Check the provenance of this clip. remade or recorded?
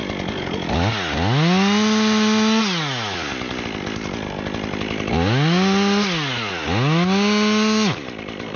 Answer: recorded